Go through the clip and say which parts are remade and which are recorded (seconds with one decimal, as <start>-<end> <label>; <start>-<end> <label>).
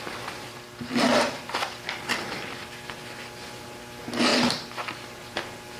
0.0-5.8 recorded